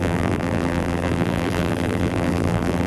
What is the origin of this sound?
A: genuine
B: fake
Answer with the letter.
B